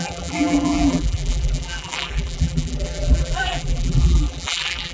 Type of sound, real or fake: fake